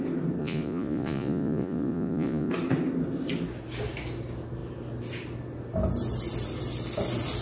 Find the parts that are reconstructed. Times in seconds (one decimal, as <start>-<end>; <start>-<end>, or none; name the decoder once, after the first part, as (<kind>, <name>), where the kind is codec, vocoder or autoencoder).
0.4-2.5 (vocoder, Vocos)